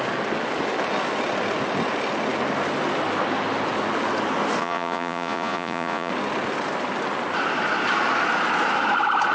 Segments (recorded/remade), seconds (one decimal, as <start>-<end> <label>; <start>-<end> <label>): 0.0-4.6 recorded; 4.6-6.1 remade; 6.1-9.3 recorded